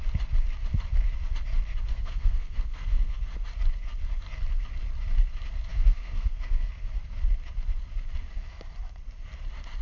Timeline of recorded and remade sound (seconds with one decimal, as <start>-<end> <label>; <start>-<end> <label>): 0.0-1.9 recorded; 1.9-3.2 remade; 3.2-5.7 recorded; 5.7-6.7 remade; 6.7-9.8 recorded